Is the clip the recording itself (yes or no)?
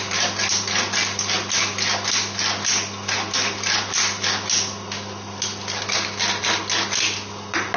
yes